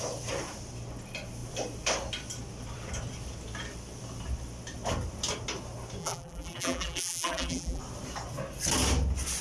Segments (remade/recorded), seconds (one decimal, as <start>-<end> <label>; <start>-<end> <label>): 0.0-6.0 recorded; 6.0-7.8 remade; 7.8-9.4 recorded